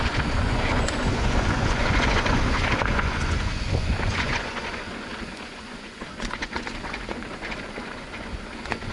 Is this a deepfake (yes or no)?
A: yes